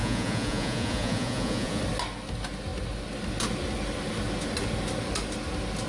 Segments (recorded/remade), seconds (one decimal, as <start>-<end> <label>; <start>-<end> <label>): 0.0-1.8 remade; 1.8-5.9 recorded